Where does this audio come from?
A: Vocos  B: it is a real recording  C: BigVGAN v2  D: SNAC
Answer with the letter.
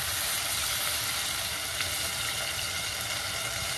B